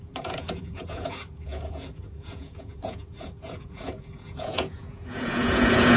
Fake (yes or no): yes